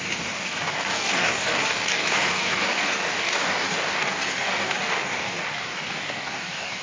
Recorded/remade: remade